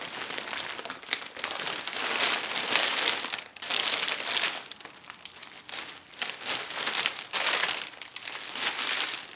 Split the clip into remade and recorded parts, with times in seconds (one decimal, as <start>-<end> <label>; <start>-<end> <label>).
0.0-9.4 recorded